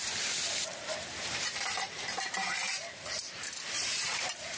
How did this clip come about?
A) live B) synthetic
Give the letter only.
B